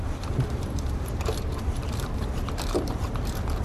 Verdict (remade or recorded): remade